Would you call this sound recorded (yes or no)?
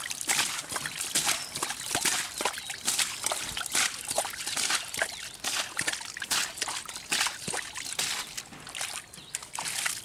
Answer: yes